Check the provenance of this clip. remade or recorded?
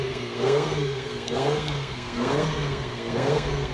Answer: remade